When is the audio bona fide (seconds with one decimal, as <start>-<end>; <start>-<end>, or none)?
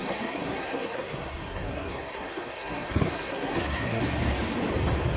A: 4.0-5.2